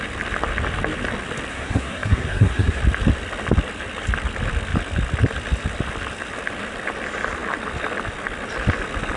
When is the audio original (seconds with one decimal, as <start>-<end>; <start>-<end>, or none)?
0.0-1.5; 2.8-9.2